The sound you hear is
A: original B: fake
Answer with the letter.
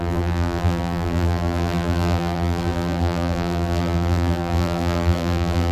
B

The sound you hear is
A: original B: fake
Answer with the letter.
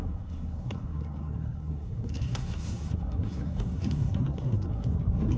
B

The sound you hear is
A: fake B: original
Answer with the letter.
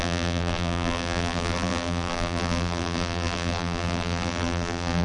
A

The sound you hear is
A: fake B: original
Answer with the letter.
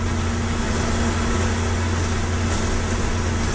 B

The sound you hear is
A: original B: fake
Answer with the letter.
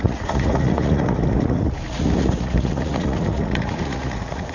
B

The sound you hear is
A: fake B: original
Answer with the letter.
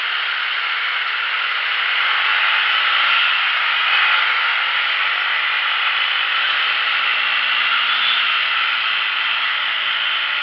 B